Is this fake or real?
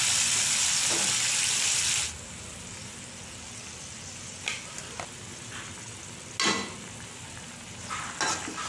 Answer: real